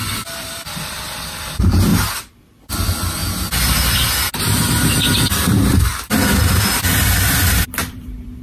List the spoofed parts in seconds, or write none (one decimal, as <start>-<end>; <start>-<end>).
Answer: 0.0-1.9; 2.6-3.2; 4.4-8.4

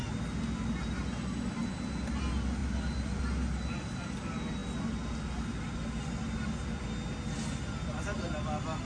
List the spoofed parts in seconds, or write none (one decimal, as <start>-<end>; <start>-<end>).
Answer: 2.6-3.2

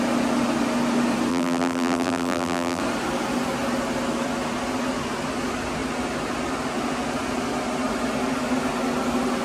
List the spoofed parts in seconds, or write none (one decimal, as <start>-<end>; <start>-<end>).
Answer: 1.3-2.8

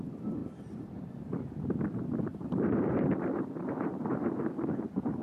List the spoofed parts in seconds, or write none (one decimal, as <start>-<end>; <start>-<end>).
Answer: 0.4-1.1; 2.3-4.4

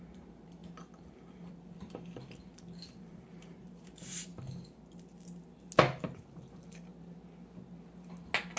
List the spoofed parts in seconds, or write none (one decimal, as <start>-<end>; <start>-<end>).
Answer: 0.0-0.6; 1.5-4.3; 6.3-6.9

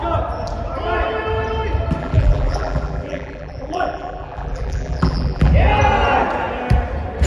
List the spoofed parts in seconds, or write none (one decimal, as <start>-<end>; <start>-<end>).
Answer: 2.0-5.5

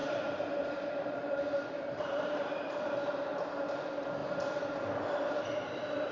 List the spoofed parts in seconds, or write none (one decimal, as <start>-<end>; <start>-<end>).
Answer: 0.0-3.5

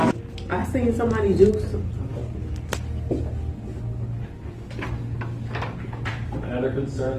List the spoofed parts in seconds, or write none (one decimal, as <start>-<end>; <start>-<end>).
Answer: none